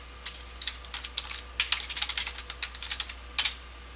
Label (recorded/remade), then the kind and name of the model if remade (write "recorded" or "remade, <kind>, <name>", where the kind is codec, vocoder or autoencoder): recorded